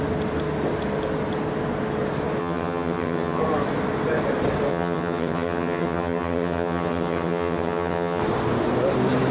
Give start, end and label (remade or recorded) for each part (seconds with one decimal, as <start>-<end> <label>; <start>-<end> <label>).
0.0-2.4 recorded; 2.4-3.4 remade; 3.4-4.7 recorded; 4.7-8.2 remade; 8.2-9.3 recorded